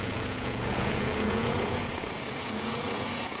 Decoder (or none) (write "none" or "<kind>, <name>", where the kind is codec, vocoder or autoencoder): vocoder, Vocos